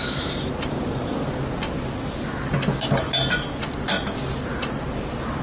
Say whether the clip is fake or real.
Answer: real